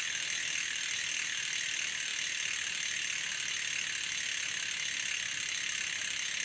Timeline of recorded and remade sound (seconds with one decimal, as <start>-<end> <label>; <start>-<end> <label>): 0.0-6.4 recorded